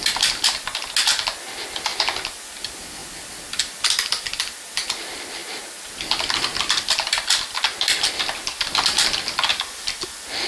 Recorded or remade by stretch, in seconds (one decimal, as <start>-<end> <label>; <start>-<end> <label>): 0.0-10.5 recorded

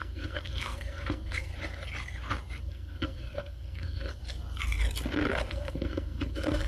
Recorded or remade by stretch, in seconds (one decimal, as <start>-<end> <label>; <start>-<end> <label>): 0.0-1.5 remade; 1.5-2.6 recorded; 2.6-4.2 remade; 4.2-5.5 recorded; 5.5-6.7 remade

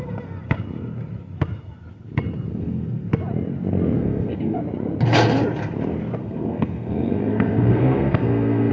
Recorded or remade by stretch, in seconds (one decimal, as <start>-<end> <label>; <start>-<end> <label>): 0.0-2.5 recorded; 2.5-3.1 remade; 3.1-4.0 recorded; 4.0-4.6 remade; 4.6-6.2 recorded; 6.2-8.7 remade

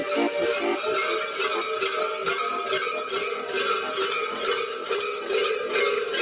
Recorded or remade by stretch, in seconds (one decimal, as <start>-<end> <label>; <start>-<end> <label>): 0.0-6.2 recorded

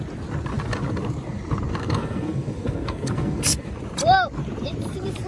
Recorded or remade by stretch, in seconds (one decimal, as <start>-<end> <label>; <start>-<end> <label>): 0.0-1.7 recorded; 1.7-3.7 remade; 3.7-5.3 recorded

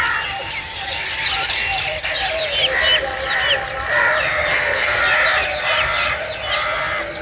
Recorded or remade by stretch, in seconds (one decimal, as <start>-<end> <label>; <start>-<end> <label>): 0.0-4.5 recorded; 4.5-5.0 remade; 5.0-7.2 recorded

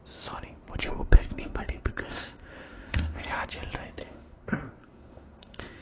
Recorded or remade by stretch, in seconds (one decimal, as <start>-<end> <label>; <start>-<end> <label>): 0.0-0.8 recorded; 0.8-3.3 remade; 3.3-4.0 recorded; 4.0-5.8 remade